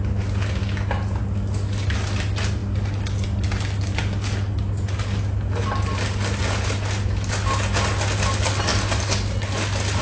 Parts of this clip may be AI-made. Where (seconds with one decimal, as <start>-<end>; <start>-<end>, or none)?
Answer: none